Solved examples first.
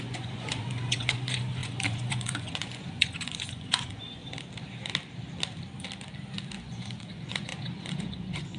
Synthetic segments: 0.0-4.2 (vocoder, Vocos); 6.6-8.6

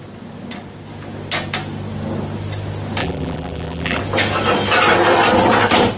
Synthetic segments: 3.0-4.0 (vocoder, BigVGAN v2)

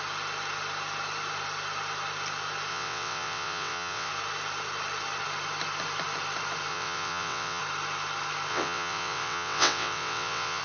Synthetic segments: 2.7-4.1 (vocoder, WaveNeXt); 6.7-7.6; 8.5-10.6

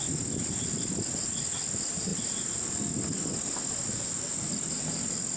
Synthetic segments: none

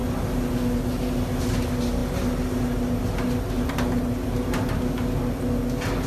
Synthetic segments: none

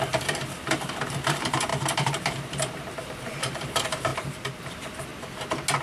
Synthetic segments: 0.0-5.1 (vocoder, BigVGAN v2)

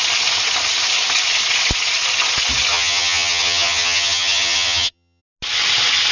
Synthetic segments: 2.7-5.2 (vocoder, HiFi-GAN)

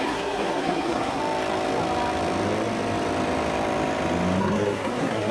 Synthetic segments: 0.0-1.2 (codec, SNAC); 4.4-5.3